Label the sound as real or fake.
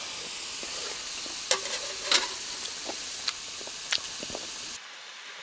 real